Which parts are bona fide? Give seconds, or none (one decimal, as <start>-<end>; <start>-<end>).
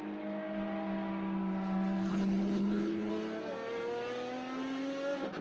0.0-2.1; 3.1-5.4